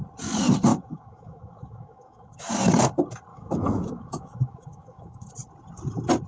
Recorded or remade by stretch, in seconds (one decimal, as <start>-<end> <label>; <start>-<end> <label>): 0.0-0.7 recorded; 0.7-2.5 remade; 2.5-3.3 recorded; 3.3-5.3 remade; 5.3-6.3 recorded